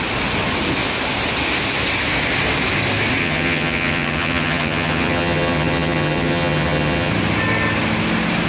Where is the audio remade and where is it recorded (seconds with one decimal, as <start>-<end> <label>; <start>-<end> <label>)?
0.0-3.2 recorded; 3.2-7.1 remade; 7.1-8.5 recorded